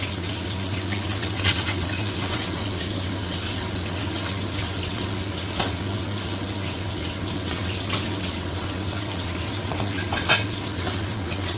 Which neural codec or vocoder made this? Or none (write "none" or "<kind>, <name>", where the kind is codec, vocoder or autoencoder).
vocoder, WaveNeXt